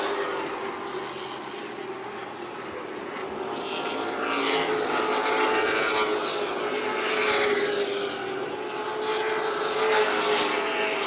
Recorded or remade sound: recorded